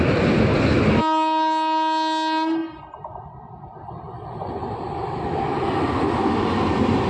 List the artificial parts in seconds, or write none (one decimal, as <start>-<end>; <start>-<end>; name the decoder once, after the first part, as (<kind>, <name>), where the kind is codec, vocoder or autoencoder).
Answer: none